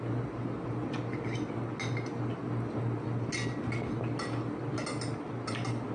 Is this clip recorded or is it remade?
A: recorded